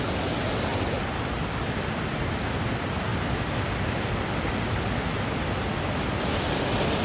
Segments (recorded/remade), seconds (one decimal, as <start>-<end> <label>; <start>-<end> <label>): 0.0-7.0 recorded